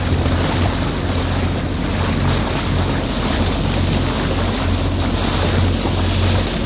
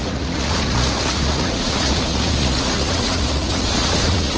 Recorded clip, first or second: first